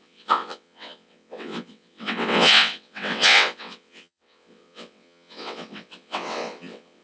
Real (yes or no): no